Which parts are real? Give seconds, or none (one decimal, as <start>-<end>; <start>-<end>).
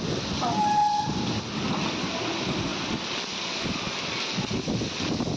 0.0-0.8; 1.4-5.4